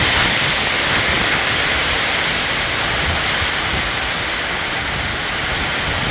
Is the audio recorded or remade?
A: recorded